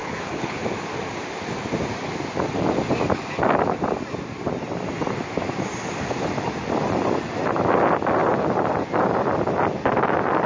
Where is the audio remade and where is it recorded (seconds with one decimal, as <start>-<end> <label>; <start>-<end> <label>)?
0.0-0.6 remade; 0.6-10.5 recorded